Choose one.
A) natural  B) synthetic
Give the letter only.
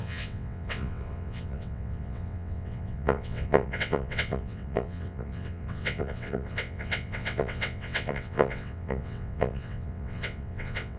B